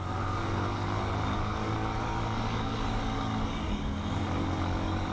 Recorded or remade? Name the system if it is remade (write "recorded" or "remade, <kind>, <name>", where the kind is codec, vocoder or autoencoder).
remade, codec, DAC